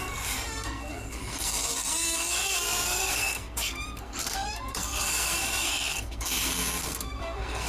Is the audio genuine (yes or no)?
no